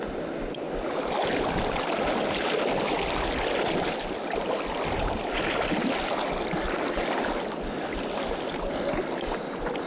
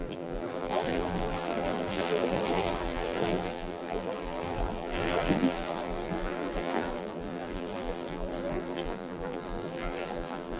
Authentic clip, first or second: first